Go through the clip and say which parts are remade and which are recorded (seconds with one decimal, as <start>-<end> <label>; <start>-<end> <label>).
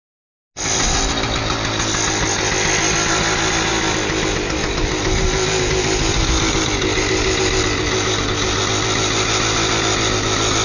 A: 0.0-10.6 recorded